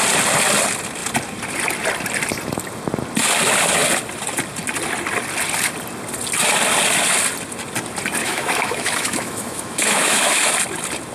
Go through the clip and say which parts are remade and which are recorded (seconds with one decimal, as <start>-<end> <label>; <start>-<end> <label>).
0.0-8.2 recorded; 8.2-10.5 remade; 10.5-11.1 recorded